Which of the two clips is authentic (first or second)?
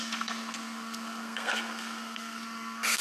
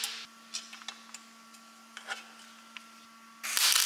second